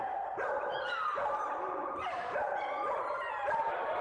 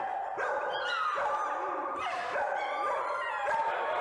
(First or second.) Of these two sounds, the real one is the second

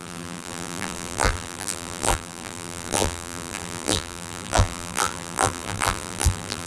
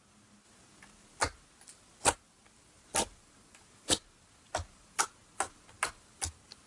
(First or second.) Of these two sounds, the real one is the second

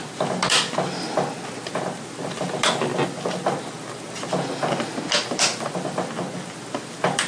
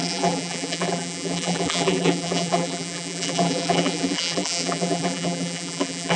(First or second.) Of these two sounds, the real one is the first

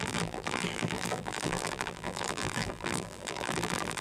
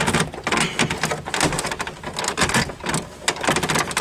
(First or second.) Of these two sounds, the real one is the second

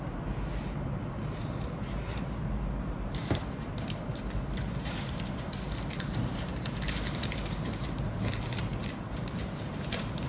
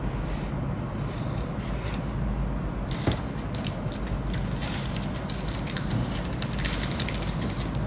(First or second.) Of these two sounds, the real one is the second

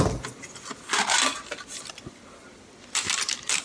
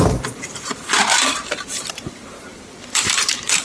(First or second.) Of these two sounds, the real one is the first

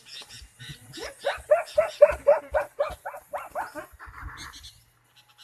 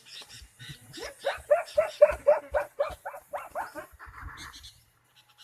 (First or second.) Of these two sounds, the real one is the first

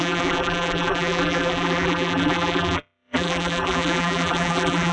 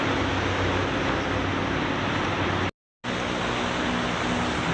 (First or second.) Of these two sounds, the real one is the second